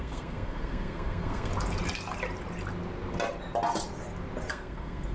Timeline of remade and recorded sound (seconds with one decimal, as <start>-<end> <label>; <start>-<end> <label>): 0.0-1.5 remade; 1.5-4.5 recorded; 4.5-5.1 remade